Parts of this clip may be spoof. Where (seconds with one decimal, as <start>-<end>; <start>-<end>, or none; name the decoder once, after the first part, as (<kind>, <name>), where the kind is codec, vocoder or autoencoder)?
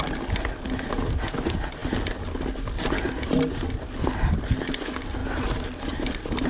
5.2-6.5 (vocoder, BigVGAN v2)